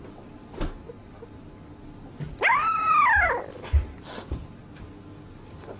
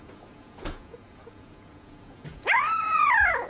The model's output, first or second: second